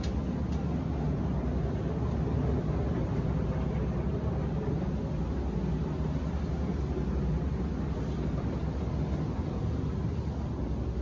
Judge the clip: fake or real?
real